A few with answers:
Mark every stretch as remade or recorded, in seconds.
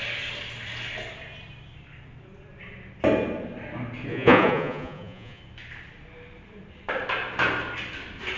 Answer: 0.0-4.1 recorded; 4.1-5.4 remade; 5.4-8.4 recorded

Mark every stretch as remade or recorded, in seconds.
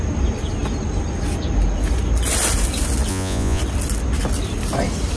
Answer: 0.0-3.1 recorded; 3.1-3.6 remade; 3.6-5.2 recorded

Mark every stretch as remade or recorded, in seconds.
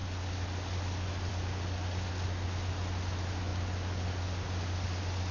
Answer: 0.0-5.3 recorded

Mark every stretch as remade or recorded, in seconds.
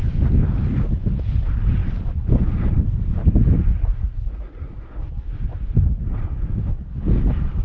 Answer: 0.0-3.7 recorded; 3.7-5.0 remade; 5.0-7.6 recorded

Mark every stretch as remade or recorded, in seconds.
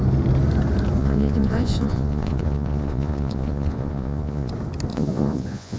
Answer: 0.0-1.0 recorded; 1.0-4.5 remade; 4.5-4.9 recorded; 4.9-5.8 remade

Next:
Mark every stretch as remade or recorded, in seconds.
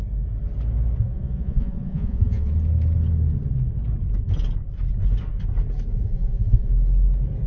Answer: 0.0-1.0 recorded; 1.0-2.5 remade; 2.5-5.9 recorded; 5.9-6.7 remade; 6.7-7.5 recorded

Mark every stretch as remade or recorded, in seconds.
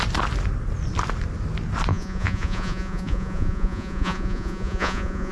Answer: 0.0-1.9 recorded; 1.9-5.3 remade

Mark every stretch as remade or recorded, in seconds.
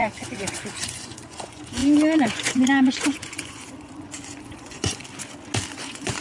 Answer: 0.0-5.0 remade; 5.0-5.7 recorded; 5.7-6.2 remade